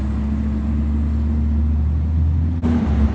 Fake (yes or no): no